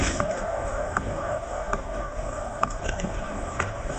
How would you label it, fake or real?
fake